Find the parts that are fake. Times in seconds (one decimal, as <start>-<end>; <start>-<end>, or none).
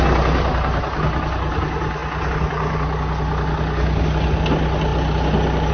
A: none